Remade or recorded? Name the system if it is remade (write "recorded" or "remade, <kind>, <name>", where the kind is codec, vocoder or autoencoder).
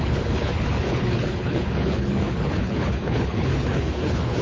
remade, codec, HILCodec